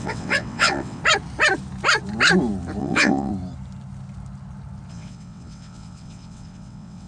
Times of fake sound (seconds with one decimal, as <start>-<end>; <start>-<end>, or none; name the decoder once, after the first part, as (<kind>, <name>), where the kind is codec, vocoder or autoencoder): 0.0-1.0 (vocoder, WaveNeXt); 2.8-3.3; 4.9-7.1